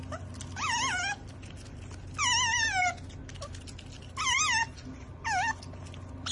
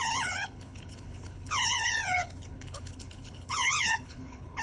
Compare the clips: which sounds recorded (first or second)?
first